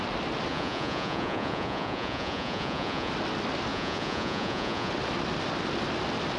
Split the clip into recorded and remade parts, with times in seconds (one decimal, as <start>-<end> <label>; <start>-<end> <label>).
0.0-0.5 recorded; 0.5-3.1 remade; 3.1-3.7 recorded; 3.7-4.9 remade; 4.9-6.4 recorded